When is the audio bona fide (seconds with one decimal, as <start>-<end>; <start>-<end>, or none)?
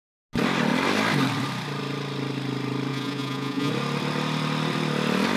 0.0-2.9; 3.7-5.4